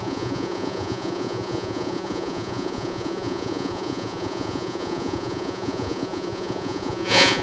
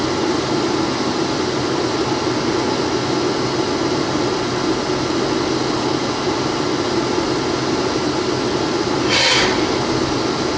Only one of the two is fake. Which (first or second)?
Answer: first